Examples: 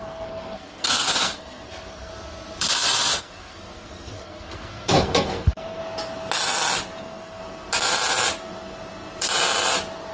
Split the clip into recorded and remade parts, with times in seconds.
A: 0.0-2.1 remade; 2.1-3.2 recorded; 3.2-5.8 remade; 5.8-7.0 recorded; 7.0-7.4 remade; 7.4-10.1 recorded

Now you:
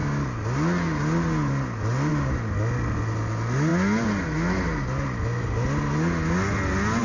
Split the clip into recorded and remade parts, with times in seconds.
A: 0.0-7.0 recorded

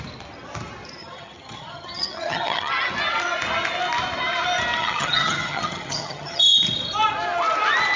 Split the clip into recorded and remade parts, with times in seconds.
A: 0.0-1.0 recorded; 1.0-2.7 remade; 2.7-4.8 recorded; 4.8-6.6 remade; 6.6-8.0 recorded

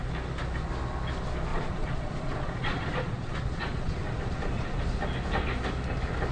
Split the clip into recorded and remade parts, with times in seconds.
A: 0.0-1.5 recorded; 1.5-4.8 remade; 4.8-6.3 recorded